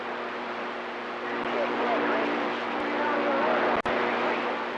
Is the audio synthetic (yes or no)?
no